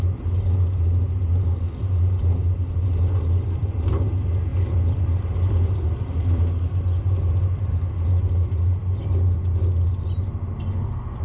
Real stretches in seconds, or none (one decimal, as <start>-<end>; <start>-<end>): 0.0-3.6; 4.1-4.5; 6.4-11.2